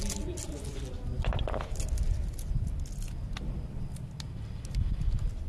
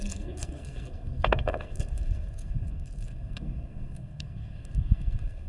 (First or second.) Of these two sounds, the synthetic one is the second